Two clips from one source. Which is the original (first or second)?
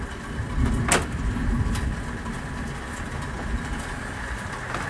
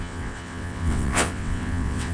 first